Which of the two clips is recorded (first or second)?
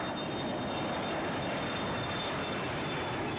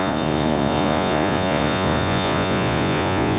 first